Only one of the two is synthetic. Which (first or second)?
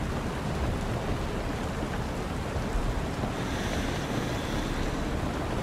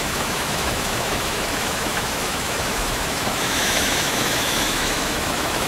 second